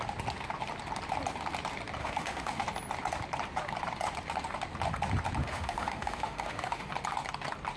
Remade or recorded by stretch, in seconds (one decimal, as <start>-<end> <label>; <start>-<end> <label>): 0.0-2.0 recorded; 2.0-2.6 remade; 2.6-5.4 recorded; 5.4-6.9 remade; 6.9-7.8 recorded